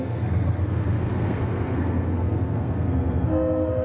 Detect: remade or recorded remade